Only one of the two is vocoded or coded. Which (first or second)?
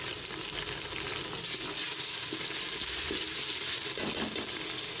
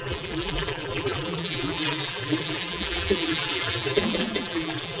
second